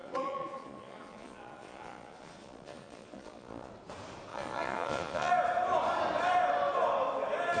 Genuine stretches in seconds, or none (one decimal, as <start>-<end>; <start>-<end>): 3.7-4.3; 5.3-7.6